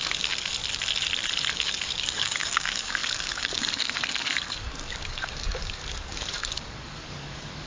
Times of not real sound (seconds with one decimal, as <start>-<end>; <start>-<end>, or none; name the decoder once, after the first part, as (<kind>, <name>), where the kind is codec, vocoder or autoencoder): 0.0-0.6 (codec, DAC); 1.5-7.7